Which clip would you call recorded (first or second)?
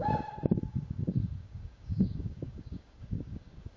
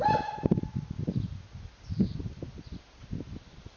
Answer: second